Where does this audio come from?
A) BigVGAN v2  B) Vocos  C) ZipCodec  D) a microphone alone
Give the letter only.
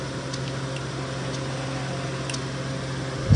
D